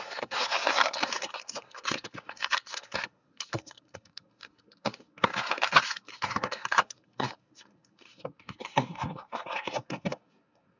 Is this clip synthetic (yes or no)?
yes